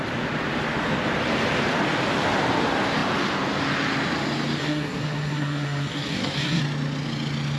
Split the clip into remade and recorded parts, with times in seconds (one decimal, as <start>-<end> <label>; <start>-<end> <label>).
0.0-4.6 recorded; 4.6-6.6 remade; 6.6-7.6 recorded